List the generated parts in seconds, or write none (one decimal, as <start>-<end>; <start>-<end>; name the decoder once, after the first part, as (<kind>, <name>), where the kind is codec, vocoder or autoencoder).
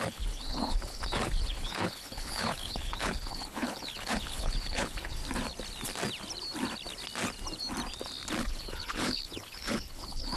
0.0-5.2 (codec, HILCodec); 8.4-10.4